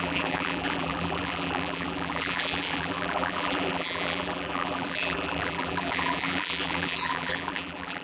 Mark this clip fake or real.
fake